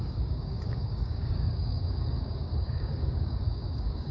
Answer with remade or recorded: remade